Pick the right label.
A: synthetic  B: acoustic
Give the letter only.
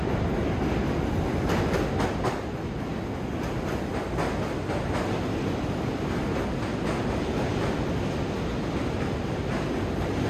B